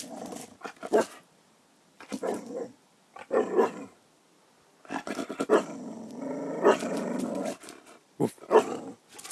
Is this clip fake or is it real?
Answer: real